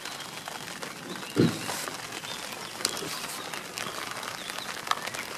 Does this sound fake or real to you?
real